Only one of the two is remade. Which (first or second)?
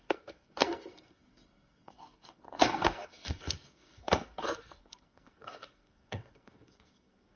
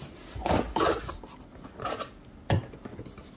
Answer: first